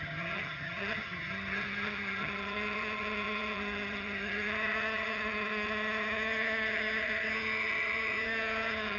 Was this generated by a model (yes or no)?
yes